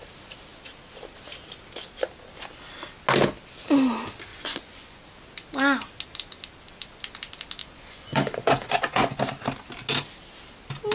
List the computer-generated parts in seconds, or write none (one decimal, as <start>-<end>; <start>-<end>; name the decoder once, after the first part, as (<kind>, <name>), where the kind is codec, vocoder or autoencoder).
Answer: 4.3-5.0 (vocoder, Vocos); 7.6-9.2